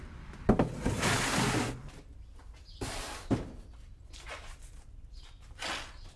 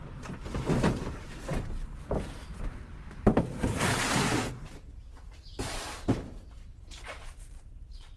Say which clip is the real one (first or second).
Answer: first